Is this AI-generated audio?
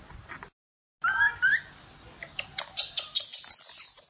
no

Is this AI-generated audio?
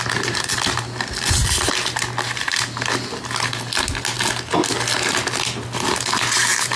no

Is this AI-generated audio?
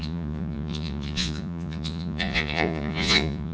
yes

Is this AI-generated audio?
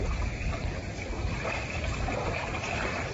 no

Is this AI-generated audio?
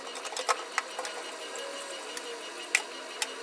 no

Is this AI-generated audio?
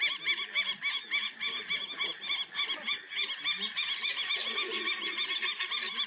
no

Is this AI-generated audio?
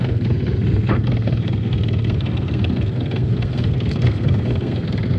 yes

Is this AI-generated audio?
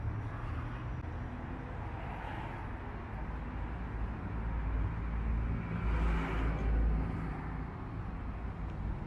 no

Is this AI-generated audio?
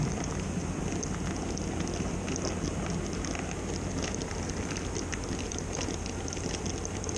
no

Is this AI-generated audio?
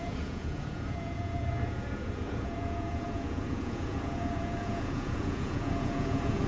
yes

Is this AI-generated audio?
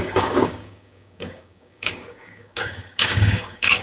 yes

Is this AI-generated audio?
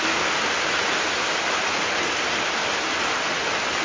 no